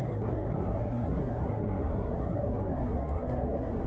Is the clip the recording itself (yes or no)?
no